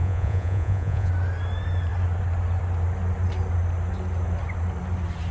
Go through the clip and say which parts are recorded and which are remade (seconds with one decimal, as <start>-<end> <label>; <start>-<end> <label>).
0.0-1.1 remade; 1.1-5.3 recorded